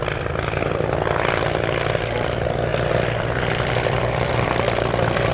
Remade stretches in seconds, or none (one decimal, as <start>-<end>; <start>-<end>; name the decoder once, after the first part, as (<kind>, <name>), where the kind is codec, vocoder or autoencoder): 0.0-5.3 (vocoder, BigVGAN v2)

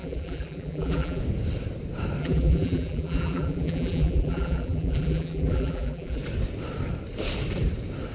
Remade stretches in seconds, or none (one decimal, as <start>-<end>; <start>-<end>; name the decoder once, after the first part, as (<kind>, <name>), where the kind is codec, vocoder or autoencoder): 0.0-1.2 (vocoder, BigVGAN v2); 2.2-6.2